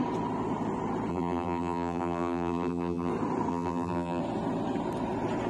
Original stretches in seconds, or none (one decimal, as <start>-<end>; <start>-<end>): 0.0-1.1; 3.1-3.5; 4.2-5.5